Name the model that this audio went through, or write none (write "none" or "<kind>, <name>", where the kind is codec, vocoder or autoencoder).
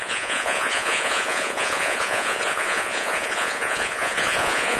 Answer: vocoder, Vocos